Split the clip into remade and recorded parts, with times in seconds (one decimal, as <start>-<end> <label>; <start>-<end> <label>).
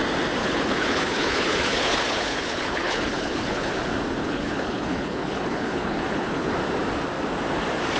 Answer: 0.0-0.4 recorded; 0.4-3.7 remade; 3.7-4.2 recorded; 4.2-6.5 remade; 6.5-8.0 recorded